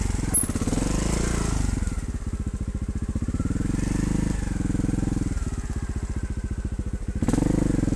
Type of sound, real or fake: real